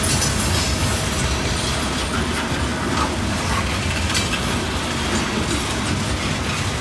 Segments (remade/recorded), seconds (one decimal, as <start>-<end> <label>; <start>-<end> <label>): 0.0-6.8 recorded